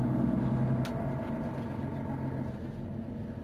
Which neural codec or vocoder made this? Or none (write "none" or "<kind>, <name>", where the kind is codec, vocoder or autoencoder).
none